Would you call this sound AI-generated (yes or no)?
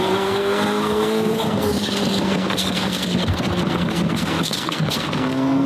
yes